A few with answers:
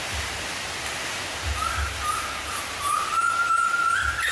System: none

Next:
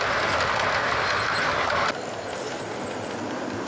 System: none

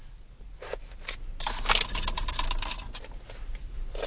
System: none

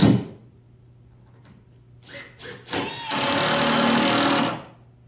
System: none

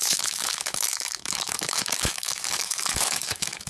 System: autoencoder, DAC-VAE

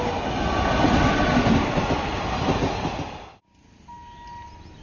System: none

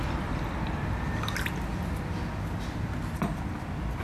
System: none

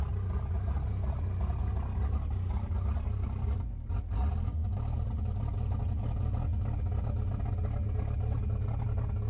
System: none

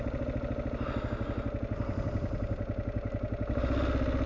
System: none